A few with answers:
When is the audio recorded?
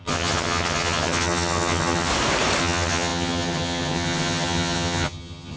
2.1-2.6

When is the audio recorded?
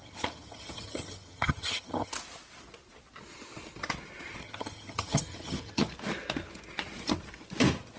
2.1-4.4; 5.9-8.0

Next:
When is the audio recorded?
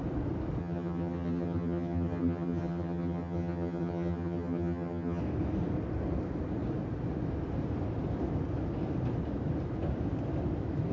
0.0-0.6; 5.2-10.9